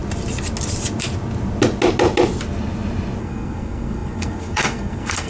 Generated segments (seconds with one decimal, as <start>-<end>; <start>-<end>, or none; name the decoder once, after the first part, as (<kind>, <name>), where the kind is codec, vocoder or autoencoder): 3.2-5.3 (codec, SNAC)